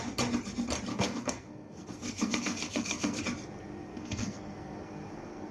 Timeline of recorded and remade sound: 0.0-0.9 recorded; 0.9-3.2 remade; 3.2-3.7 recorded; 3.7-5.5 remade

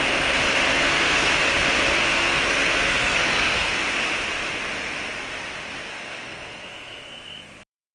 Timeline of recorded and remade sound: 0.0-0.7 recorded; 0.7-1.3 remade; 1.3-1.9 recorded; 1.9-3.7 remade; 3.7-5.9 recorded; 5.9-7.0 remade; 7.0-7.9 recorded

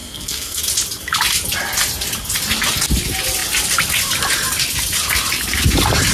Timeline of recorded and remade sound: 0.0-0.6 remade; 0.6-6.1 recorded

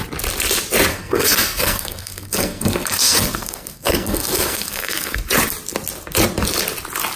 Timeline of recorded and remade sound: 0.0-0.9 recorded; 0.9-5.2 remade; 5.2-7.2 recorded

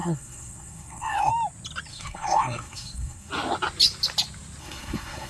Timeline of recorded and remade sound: 0.0-1.3 remade; 1.3-1.9 recorded; 1.9-3.3 remade; 3.3-4.6 recorded; 4.6-5.3 remade